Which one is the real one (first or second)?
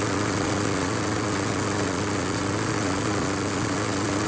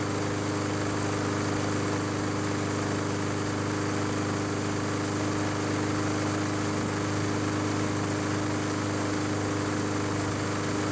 second